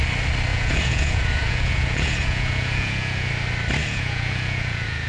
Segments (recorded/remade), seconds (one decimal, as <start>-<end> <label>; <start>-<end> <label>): 0.0-0.5 recorded; 0.5-3.3 remade; 3.3-3.8 recorded; 3.8-5.1 remade